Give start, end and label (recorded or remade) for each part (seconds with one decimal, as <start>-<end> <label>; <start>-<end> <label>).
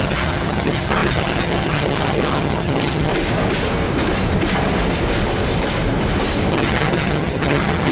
0.0-3.1 remade; 3.1-6.5 recorded; 6.5-7.9 remade